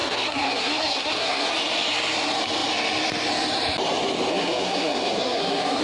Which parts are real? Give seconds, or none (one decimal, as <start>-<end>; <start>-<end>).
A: 1.5-4.3